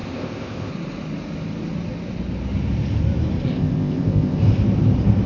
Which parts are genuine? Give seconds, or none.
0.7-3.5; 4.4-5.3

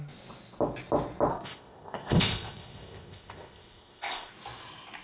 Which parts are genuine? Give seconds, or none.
0.0-1.3; 4.3-5.0

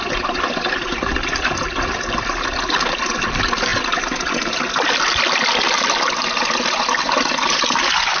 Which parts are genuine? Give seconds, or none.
0.0-8.2

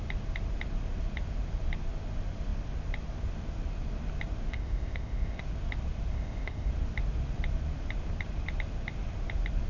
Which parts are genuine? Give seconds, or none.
0.0-4.5; 5.4-6.1; 6.7-9.7

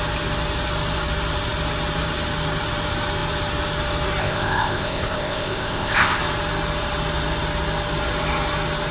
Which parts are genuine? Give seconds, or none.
0.0-4.2; 6.2-8.9

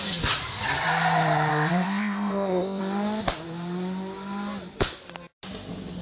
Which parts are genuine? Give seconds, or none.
0.0-1.5; 2.8-6.0

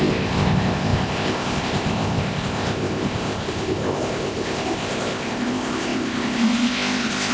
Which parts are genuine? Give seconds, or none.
none